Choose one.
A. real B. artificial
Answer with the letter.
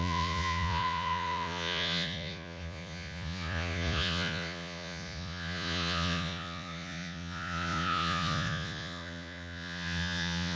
B